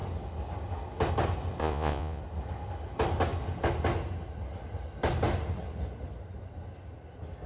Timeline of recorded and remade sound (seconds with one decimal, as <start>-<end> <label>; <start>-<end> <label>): 0.0-1.6 recorded; 1.6-2.2 remade; 2.2-7.5 recorded